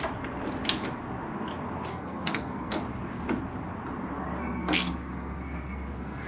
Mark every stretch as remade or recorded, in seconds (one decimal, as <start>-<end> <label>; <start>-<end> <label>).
0.0-1.9 recorded; 1.9-2.8 remade; 2.8-4.4 recorded; 4.4-6.3 remade